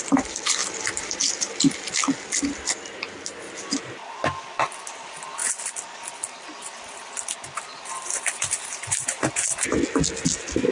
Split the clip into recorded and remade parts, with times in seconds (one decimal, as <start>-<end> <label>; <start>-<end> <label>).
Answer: 0.0-0.6 recorded; 0.6-1.2 remade; 1.2-5.4 recorded; 5.4-9.4 remade; 9.4-10.7 recorded